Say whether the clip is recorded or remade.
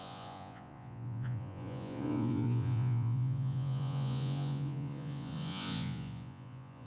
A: remade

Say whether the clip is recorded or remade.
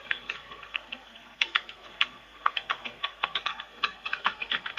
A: remade